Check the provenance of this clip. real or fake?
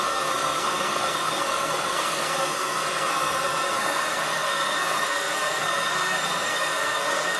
fake